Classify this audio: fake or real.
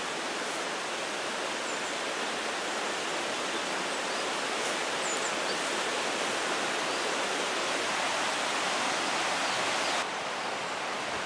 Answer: real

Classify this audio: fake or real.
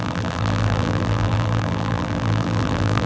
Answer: fake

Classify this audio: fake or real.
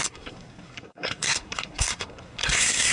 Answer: fake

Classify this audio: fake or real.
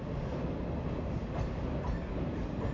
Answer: real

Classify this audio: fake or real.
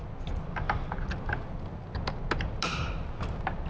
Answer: real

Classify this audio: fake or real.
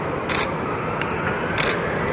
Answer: real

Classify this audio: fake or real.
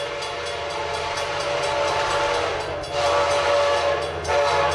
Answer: real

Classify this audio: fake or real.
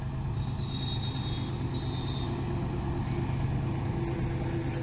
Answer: real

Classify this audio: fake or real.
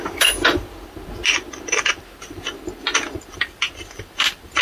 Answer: real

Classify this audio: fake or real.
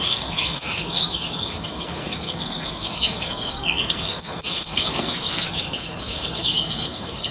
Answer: fake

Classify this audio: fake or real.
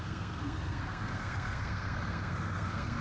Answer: fake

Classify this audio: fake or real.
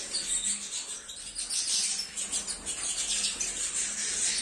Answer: real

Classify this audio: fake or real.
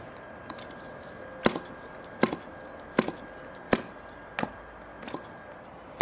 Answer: real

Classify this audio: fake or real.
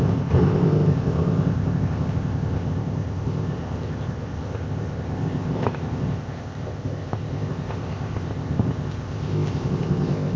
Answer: fake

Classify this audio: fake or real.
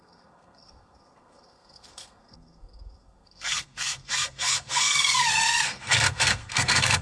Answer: fake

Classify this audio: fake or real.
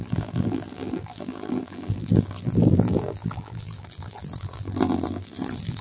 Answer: fake